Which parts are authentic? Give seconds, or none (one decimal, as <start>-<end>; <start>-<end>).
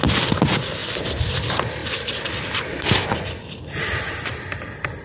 0.0-0.8; 1.3-1.8; 3.1-5.0